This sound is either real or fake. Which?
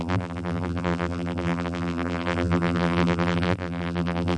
fake